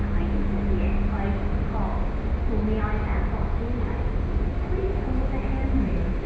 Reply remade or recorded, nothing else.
recorded